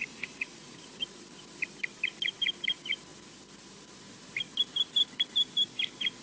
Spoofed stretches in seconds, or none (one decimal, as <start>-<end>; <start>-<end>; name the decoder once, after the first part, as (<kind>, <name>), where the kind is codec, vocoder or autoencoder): 0.0-0.9 (vocoder, Vocos)